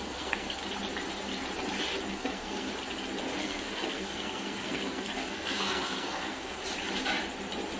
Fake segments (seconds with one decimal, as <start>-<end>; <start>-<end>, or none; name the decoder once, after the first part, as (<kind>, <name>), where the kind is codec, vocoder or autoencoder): 0.0-0.6 (codec, SNAC); 2.1-2.7; 3.4-6.6

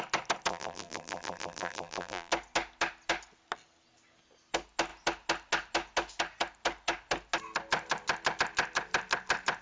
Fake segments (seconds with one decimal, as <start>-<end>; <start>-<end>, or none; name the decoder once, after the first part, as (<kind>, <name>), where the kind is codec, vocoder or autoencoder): 0.5-2.3 (vocoder, BigVGAN v2)

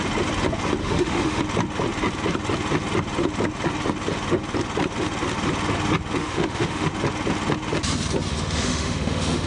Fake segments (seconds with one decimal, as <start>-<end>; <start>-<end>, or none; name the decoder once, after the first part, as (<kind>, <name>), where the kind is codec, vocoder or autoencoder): 0.8-1.4 (autoencoder, DAC-VAE); 6.2-6.9; 8.3-9.5